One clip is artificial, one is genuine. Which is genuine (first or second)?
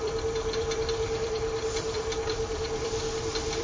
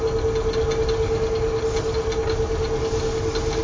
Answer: second